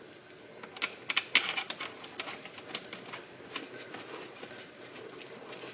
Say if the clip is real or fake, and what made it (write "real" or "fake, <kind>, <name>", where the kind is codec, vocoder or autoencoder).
real